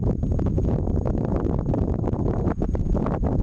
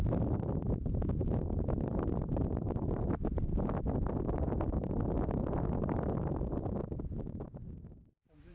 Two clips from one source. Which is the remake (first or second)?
first